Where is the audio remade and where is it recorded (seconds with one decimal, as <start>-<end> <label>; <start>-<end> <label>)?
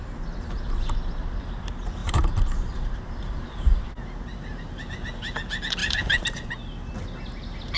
0.0-2.0 recorded; 2.0-3.8 remade; 3.8-4.3 recorded; 4.3-4.8 remade; 4.8-5.8 recorded; 5.8-6.5 remade; 6.5-7.8 recorded